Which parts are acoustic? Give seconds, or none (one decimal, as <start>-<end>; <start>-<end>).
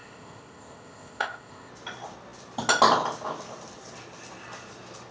1.7-5.1